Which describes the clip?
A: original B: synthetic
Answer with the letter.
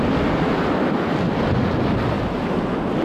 A